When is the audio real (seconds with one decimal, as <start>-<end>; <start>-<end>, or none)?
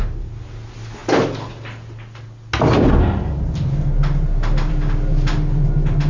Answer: 0.0-6.1